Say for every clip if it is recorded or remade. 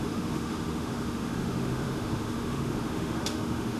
remade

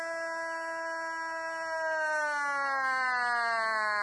recorded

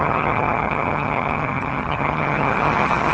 remade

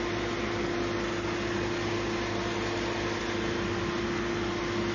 recorded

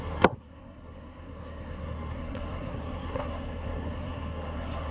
remade